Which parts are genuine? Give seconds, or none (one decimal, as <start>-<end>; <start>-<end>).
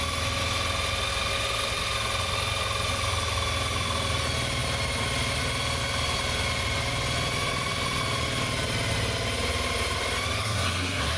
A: 0.0-10.4